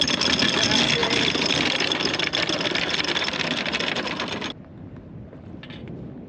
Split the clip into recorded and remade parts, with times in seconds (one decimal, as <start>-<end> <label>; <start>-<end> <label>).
0.0-1.0 recorded; 1.0-2.2 remade; 2.2-6.3 recorded